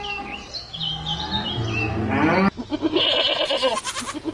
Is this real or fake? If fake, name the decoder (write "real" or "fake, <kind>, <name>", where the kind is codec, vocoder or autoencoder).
real